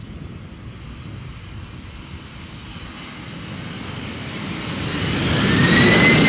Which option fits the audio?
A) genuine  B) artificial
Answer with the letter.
A